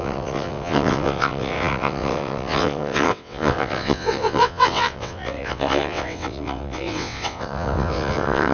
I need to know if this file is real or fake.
fake